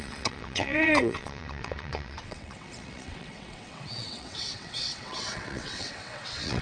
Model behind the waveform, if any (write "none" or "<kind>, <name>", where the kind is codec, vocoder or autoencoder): vocoder, WaveNeXt